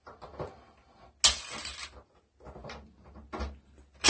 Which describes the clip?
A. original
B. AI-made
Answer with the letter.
A